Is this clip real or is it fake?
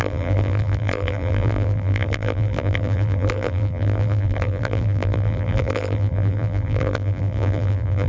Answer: fake